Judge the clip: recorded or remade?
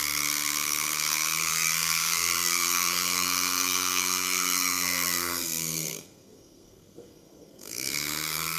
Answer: remade